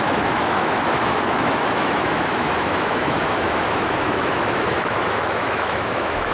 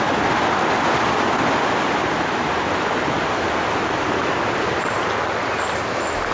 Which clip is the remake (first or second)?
first